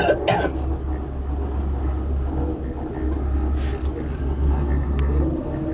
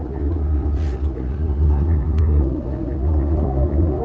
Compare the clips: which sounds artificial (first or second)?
second